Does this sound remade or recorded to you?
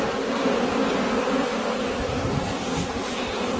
recorded